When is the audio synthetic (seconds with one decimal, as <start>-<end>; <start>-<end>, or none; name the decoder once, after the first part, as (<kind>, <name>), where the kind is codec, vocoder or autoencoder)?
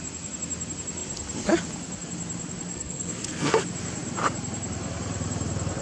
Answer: 2.7-3.6 (codec, SNAC)